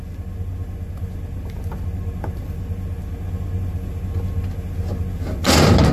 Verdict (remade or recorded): recorded